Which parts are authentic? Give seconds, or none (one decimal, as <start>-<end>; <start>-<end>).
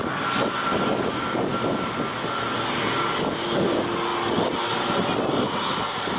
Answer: 0.0-6.2